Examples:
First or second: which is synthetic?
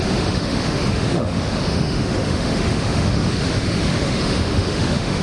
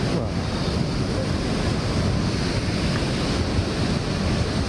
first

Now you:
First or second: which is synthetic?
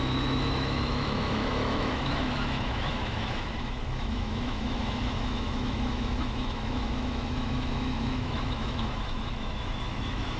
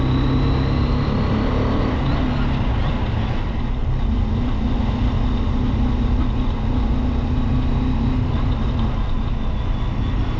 first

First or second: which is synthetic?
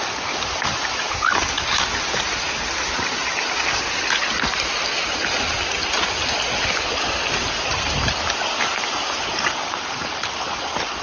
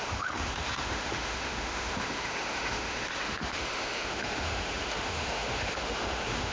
second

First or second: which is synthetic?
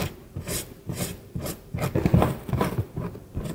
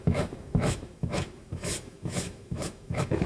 second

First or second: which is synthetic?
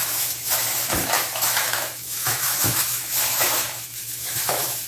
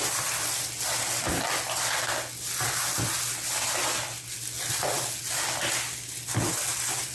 first